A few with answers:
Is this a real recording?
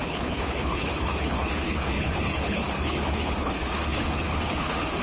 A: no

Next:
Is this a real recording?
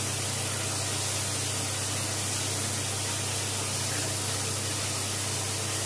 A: yes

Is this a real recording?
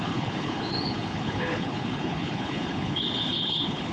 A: no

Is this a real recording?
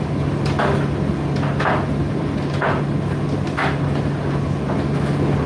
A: yes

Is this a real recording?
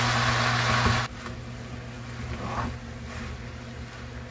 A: yes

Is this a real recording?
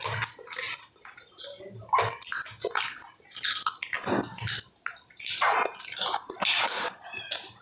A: yes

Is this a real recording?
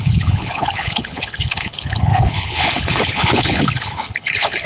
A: no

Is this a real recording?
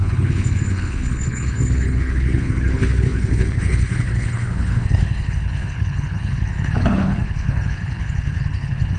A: no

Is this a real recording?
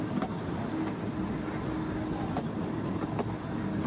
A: yes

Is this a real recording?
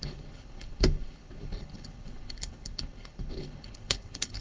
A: no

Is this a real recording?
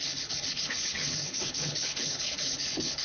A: no